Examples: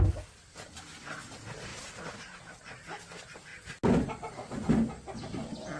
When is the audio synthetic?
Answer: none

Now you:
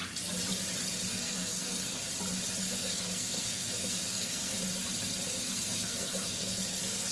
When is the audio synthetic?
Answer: 1.1-2.1 (codec, SNAC); 2.6-4.6; 5.3-7.1

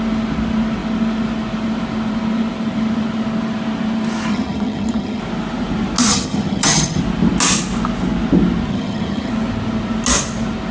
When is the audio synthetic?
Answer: 4.3-5.2 (vocoder, HiFi-GAN); 6.1-7.0; 8.7-9.3

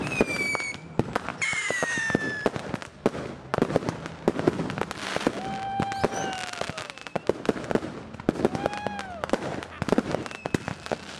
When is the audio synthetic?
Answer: 1.3-2.0 (vocoder, BigVGAN v2)

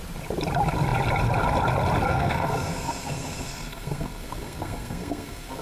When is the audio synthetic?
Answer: 2.1-5.6 (codec, SNAC)

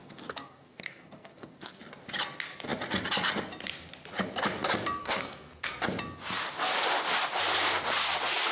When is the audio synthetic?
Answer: 0.0-1.8 (codec, SNAC); 5.0-5.7